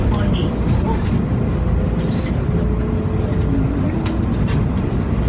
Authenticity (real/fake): real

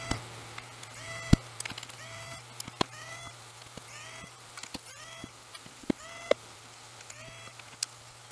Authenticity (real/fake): real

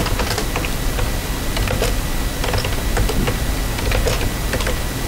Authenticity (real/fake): real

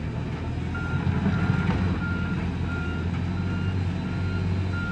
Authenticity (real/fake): real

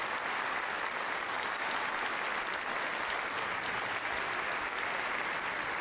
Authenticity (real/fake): real